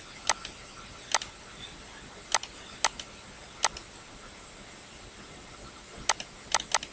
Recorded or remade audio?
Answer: recorded